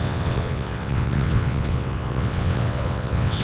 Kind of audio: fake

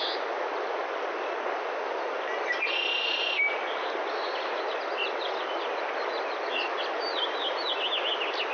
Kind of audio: real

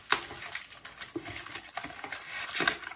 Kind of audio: real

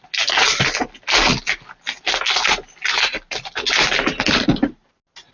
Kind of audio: real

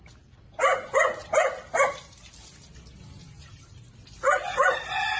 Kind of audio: real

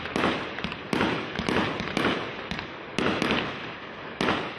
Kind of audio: real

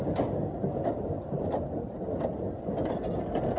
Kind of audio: real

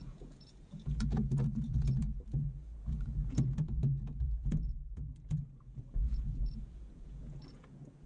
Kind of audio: fake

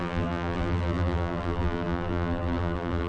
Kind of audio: fake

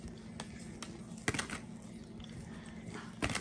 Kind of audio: real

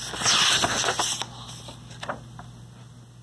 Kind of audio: real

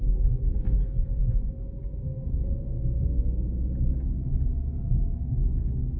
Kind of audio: real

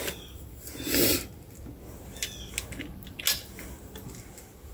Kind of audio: real